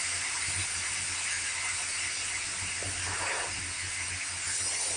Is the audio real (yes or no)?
yes